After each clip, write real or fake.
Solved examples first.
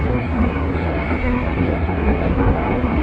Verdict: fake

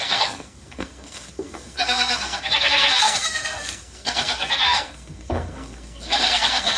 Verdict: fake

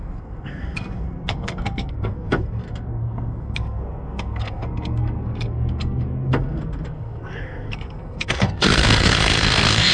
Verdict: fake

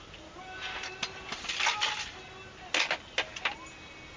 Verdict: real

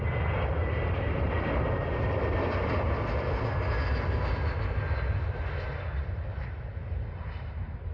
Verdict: real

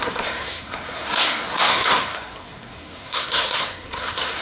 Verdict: fake